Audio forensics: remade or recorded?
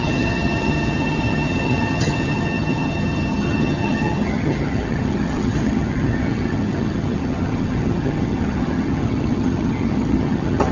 remade